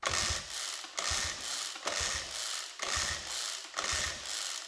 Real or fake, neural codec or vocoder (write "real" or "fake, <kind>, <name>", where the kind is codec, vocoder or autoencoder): real